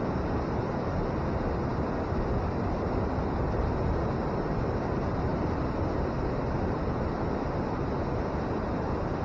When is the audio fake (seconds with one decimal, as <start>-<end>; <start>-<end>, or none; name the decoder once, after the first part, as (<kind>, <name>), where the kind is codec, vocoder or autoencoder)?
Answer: none